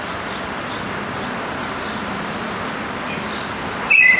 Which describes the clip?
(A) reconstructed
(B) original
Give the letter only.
A